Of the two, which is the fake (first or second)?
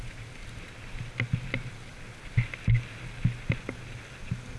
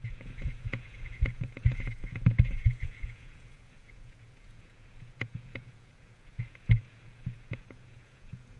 second